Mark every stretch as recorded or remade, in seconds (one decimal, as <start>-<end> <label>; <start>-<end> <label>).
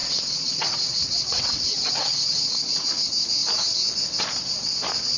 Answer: 0.0-2.9 remade; 2.9-5.2 recorded